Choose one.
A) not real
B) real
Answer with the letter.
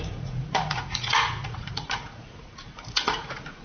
A